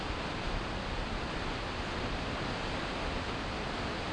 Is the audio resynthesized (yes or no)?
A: no